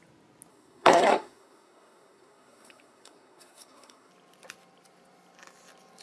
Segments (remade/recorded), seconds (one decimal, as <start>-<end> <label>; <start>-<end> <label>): 0.0-0.5 recorded; 0.5-4.1 remade; 4.1-6.0 recorded